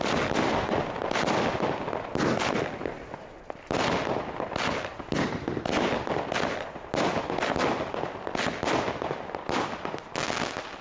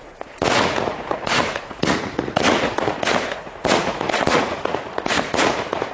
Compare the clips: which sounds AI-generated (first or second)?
second